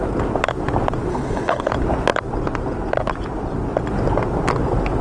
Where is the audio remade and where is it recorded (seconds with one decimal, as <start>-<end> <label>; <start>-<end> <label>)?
0.0-1.1 recorded; 1.1-1.7 remade; 1.7-5.0 recorded